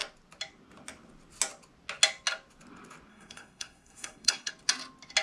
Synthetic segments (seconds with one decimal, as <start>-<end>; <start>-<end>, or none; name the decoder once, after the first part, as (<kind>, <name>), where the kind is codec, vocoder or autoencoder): 3.1-4.5 (codec, SNAC)